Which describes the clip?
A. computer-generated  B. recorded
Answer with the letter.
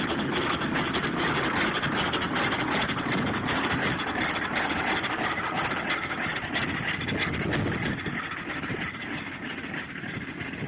B